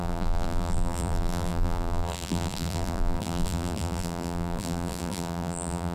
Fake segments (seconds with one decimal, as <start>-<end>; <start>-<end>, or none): 0.0-5.9

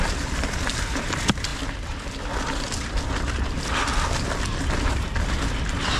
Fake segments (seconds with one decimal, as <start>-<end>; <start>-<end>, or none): none

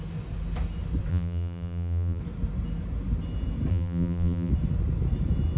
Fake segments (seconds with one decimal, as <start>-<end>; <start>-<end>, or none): 1.1-2.2; 3.7-4.5